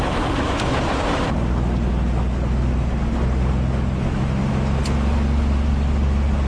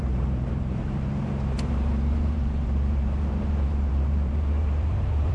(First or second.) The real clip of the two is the first